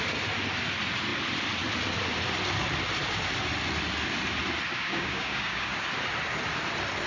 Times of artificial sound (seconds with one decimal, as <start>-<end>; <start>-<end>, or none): 4.7-5.9